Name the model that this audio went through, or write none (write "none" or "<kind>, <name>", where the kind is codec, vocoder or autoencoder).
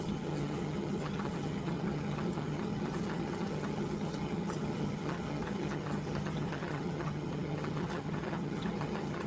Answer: vocoder, HiFi-GAN